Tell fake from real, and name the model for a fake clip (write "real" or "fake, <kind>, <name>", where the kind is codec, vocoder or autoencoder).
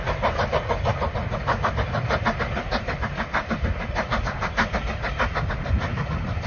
real